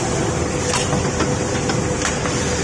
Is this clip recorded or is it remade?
recorded